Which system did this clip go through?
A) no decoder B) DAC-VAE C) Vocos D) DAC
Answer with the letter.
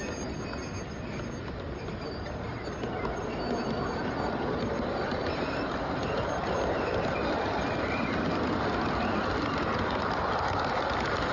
A